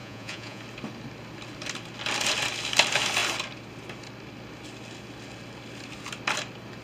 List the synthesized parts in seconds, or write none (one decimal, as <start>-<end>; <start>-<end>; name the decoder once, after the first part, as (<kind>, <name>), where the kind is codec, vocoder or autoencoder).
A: 0.0-0.6 (vocoder, Vocos)